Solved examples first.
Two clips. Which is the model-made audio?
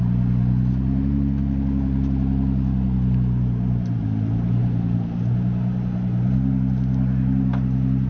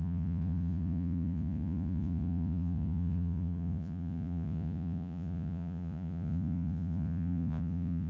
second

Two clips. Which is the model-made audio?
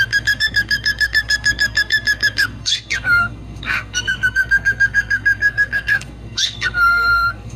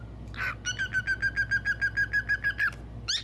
first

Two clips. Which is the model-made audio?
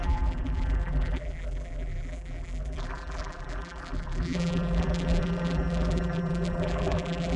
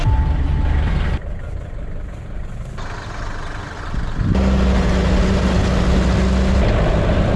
first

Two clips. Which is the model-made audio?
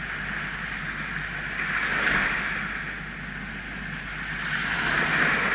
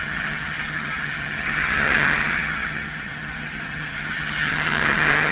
second